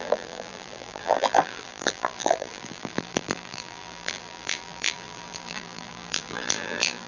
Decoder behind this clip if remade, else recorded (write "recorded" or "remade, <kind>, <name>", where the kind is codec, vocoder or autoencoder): remade, vocoder, BigVGAN v2